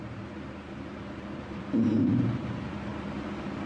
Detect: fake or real fake